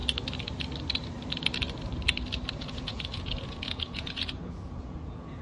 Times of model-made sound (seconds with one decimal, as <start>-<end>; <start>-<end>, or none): 2.5-5.4